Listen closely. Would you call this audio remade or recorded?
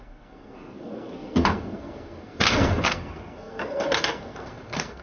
remade